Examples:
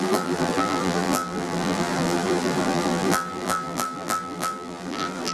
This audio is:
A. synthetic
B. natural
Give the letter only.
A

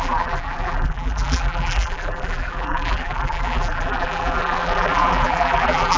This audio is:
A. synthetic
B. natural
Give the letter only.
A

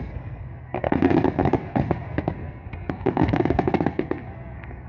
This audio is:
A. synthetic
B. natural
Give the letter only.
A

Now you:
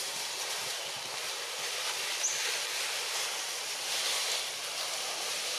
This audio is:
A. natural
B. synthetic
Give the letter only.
A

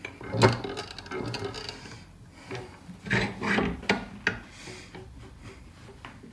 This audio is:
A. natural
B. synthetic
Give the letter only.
A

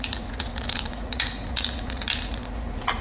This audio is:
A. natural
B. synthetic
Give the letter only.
B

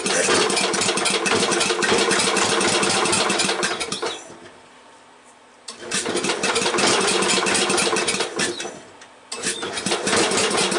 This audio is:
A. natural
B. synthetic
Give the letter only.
A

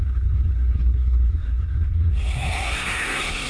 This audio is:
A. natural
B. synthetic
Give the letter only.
B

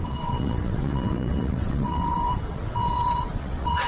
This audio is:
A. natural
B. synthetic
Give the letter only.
B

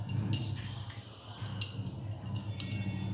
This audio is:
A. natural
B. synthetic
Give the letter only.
A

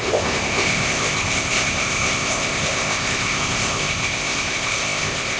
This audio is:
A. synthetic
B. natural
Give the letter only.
A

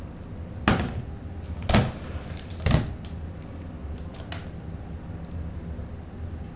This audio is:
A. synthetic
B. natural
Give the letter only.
B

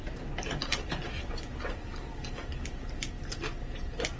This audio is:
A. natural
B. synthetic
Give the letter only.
A